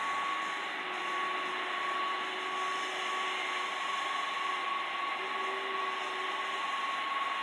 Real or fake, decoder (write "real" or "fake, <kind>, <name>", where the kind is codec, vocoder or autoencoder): real